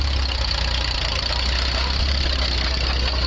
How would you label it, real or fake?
real